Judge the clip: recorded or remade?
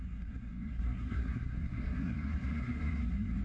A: remade